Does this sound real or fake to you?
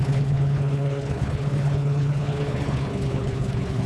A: fake